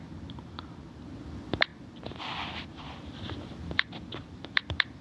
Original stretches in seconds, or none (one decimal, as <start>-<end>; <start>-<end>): none